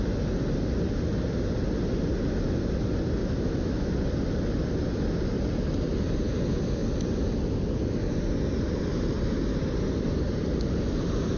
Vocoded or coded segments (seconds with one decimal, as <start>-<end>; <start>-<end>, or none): 3.2-3.9